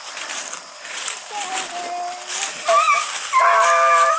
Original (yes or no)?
yes